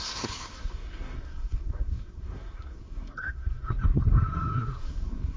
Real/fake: fake